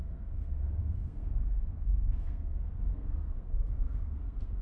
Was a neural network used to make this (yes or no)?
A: yes